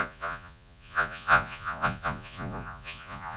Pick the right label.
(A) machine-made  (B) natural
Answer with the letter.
A